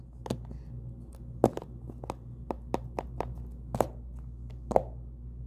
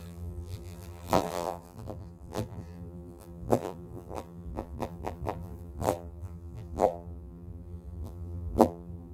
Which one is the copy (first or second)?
second